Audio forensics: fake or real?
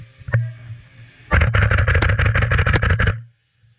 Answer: real